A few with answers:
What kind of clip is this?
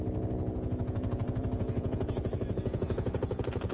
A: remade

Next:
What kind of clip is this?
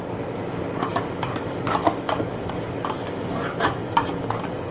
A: remade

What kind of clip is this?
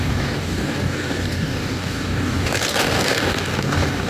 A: remade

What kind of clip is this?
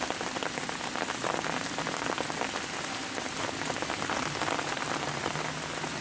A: recorded